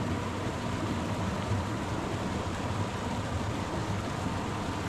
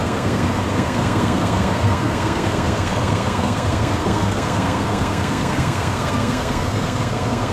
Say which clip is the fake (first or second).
second